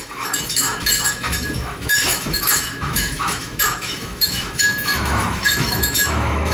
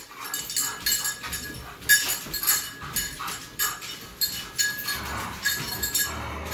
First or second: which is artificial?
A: first